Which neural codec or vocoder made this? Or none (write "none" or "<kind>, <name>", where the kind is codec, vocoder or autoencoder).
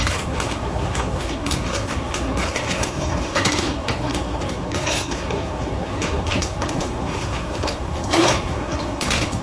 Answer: codec, SNAC